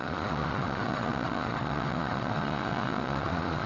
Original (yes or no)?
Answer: no